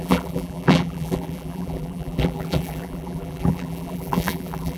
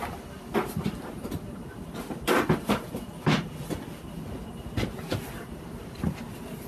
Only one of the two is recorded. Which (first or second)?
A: second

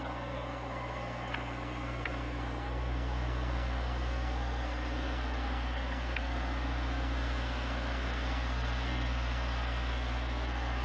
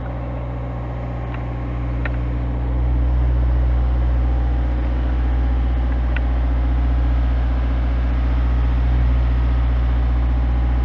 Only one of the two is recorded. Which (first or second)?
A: second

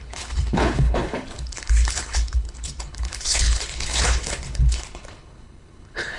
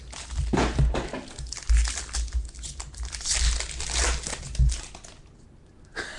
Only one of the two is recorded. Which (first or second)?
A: second